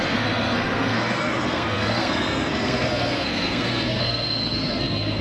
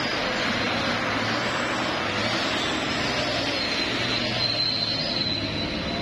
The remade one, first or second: first